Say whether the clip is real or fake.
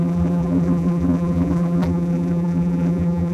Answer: fake